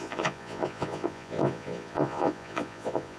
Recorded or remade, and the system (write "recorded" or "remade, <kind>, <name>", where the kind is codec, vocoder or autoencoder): remade, vocoder, Vocos